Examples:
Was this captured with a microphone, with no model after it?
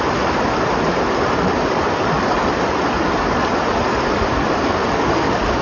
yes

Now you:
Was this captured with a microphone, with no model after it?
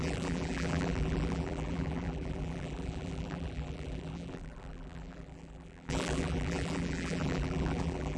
no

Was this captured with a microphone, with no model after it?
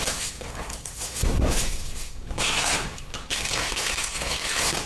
no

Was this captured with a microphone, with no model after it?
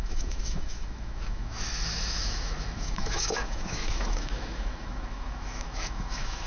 no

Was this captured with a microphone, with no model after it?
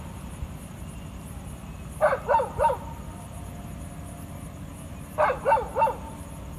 yes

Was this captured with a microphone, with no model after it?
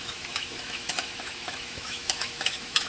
no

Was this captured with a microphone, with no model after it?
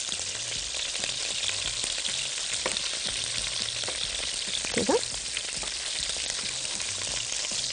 yes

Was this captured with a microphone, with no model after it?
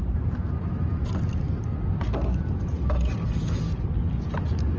yes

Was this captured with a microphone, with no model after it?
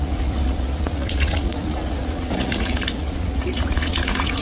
no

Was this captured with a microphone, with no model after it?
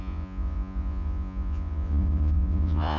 no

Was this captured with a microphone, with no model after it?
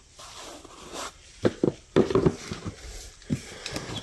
yes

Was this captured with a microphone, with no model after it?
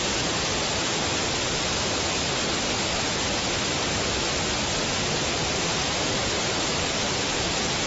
no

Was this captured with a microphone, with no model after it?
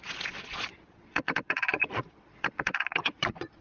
no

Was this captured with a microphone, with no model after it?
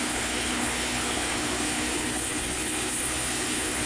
no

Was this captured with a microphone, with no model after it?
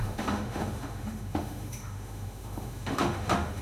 no